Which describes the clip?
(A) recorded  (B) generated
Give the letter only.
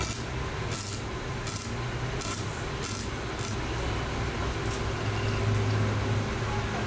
A